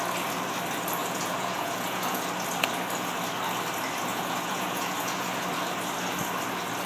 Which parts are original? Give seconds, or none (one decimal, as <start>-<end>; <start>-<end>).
0.0-1.0; 2.3-4.1; 5.4-6.9